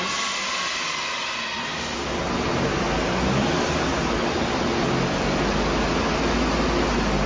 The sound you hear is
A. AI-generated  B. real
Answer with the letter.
B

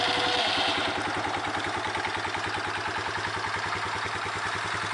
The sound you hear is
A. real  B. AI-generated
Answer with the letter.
A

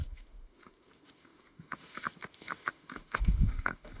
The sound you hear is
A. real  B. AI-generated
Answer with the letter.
B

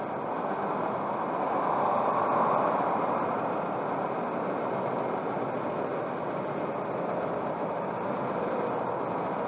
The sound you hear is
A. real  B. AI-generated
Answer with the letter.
A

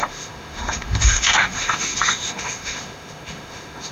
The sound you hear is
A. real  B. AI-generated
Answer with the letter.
B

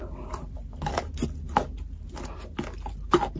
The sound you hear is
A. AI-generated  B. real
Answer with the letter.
B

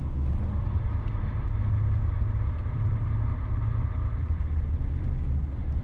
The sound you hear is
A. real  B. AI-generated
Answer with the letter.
A